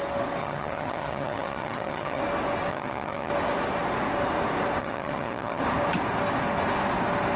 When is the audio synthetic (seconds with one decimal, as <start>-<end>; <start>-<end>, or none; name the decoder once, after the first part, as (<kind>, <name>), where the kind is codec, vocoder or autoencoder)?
0.4-2.2 (vocoder, HiFi-GAN); 2.7-3.3; 4.8-5.6